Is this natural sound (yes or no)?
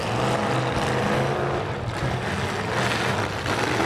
yes